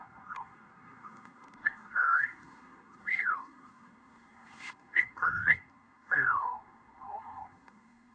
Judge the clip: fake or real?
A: fake